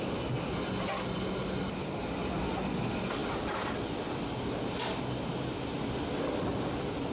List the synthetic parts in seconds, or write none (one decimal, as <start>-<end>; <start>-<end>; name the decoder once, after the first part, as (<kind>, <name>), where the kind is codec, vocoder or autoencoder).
none